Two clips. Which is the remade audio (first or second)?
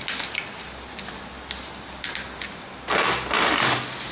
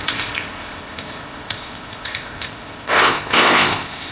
second